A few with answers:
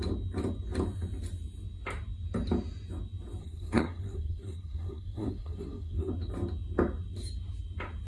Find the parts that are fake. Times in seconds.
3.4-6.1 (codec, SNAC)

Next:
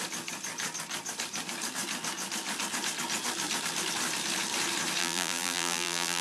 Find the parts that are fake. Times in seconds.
5.0-6.2 (vocoder, BigVGAN v2)